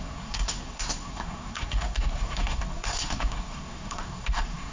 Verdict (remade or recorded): remade